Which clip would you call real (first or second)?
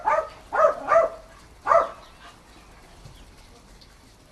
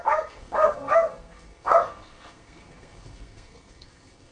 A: first